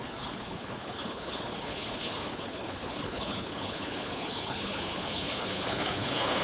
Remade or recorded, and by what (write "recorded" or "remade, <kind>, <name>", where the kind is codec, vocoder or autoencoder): remade, codec, HILCodec